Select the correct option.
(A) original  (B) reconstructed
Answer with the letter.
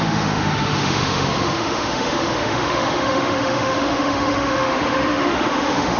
B